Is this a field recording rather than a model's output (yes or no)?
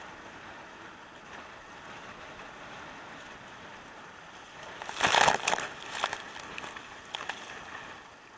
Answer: yes